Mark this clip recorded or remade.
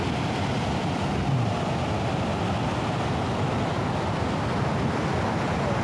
recorded